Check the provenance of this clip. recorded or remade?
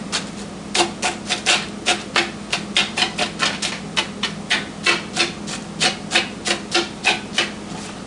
recorded